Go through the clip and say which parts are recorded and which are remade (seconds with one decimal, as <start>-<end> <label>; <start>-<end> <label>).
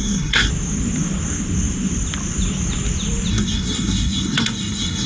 0.0-0.5 remade; 0.5-3.3 recorded; 3.3-5.1 remade